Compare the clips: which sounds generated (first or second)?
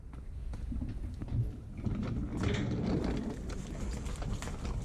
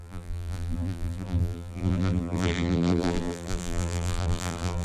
second